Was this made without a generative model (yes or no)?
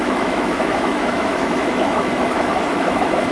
no